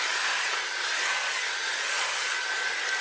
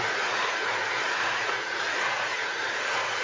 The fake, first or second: second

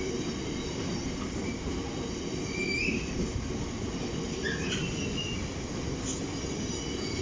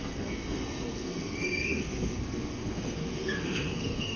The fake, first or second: second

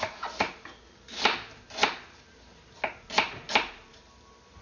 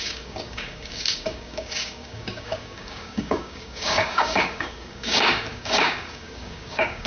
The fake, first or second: second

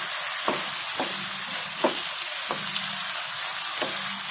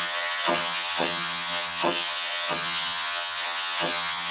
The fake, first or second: second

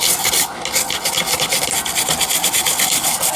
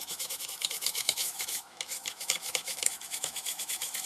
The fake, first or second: second